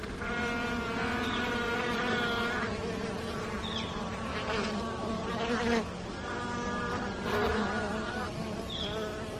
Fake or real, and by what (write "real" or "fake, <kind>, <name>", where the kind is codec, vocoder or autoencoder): real